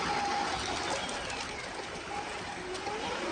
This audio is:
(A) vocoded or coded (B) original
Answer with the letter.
B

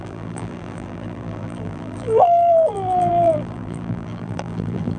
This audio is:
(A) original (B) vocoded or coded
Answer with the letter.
B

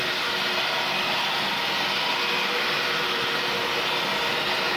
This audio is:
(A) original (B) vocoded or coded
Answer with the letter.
A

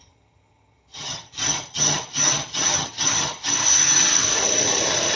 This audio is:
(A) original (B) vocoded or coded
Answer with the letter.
B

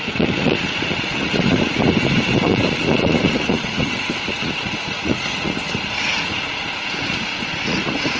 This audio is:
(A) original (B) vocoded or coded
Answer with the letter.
B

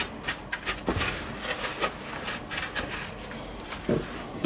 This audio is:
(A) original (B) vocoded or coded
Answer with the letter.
A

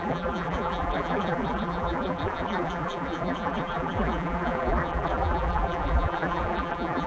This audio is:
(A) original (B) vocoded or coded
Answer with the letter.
B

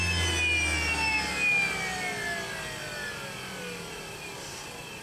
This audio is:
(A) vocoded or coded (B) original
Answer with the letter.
B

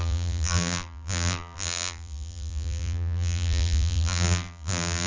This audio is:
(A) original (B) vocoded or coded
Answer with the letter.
B